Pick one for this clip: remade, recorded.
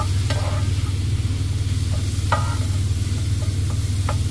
recorded